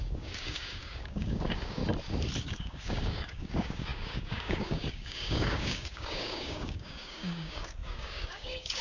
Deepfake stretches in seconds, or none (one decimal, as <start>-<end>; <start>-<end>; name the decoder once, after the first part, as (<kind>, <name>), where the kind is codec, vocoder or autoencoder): 0.0-1.8 (codec, DAC); 2.4-8.8

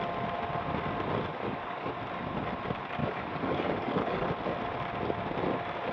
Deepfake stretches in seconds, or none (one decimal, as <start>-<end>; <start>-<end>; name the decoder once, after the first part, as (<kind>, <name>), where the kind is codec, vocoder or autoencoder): 1.3-1.9 (codec, DAC); 3.0-4.3

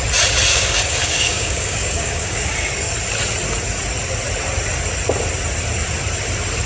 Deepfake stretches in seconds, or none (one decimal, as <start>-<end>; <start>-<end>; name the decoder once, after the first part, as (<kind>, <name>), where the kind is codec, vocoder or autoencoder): 0.5-2.7 (codec, DAC)